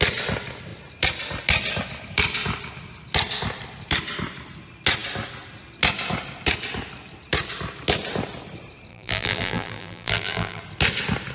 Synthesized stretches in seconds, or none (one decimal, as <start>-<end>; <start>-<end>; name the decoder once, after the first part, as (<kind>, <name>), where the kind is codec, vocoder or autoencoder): 8.9-10.6 (vocoder, BigVGAN v2)